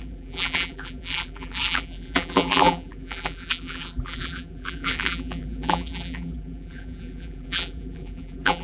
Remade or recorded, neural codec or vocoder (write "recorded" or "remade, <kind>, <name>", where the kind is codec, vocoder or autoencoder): remade, vocoder, BigVGAN v2